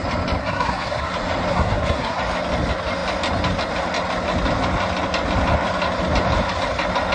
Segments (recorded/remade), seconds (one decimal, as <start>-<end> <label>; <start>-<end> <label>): 0.0-0.4 recorded; 0.4-1.1 remade; 1.1-1.5 recorded; 1.5-2.2 remade; 2.2-7.1 recorded